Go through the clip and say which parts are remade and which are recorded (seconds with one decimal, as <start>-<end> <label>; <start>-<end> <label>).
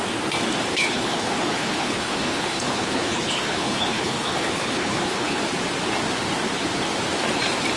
0.0-0.7 recorded; 0.7-5.4 remade; 5.4-7.8 recorded